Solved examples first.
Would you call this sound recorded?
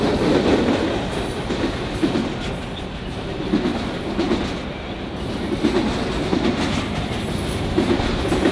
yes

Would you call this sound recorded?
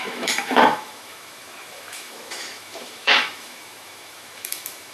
no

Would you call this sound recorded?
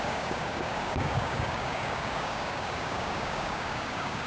no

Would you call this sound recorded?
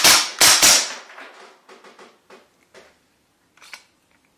yes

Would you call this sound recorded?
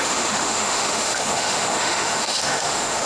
no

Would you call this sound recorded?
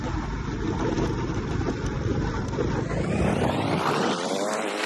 no